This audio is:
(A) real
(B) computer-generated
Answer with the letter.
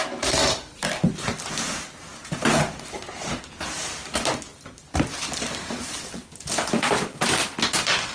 A